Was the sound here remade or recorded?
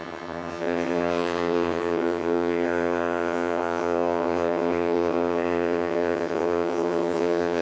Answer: remade